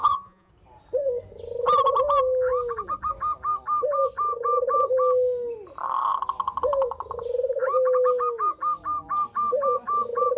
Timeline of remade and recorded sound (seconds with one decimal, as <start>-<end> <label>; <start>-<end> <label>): 0.0-0.5 remade; 0.5-10.4 recorded